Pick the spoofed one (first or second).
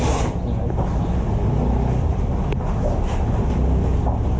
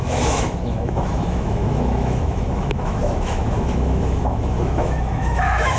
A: second